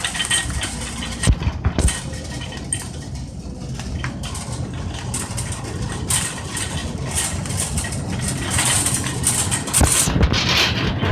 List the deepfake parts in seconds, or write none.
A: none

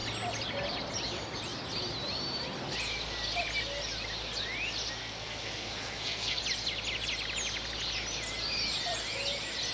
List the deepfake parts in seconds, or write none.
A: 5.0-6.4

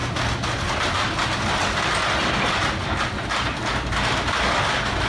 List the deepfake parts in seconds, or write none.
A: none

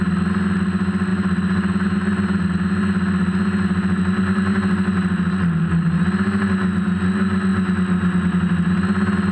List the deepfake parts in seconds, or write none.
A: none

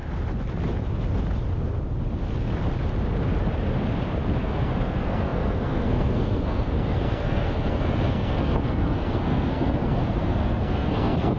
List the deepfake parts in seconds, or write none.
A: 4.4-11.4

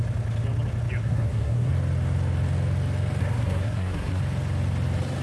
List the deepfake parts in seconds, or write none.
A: 1.0-1.7; 3.2-4.2

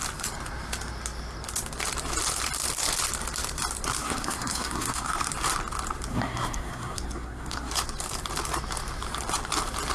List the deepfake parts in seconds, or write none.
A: 4.0-5.3; 6.1-7.7

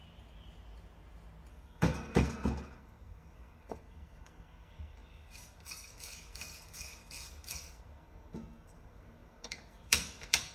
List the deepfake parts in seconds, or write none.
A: 1.5-10.5